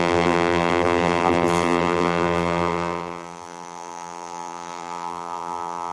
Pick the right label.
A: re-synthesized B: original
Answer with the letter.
A